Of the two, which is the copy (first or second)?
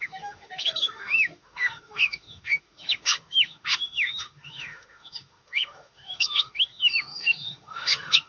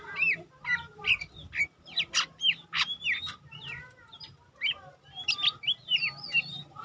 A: first